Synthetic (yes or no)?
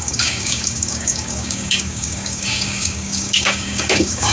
yes